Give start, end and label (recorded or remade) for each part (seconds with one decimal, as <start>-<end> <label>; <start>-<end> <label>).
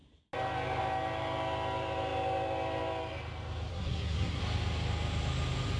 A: 0.0-3.7 recorded; 3.7-4.4 remade; 4.4-5.8 recorded